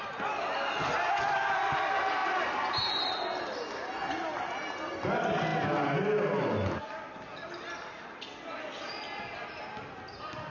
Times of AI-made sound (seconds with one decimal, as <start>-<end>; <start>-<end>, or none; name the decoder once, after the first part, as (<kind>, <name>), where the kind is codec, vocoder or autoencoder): none